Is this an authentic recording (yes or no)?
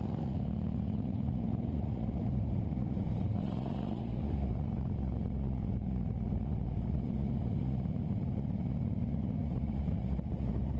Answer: no